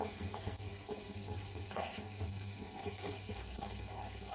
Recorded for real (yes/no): no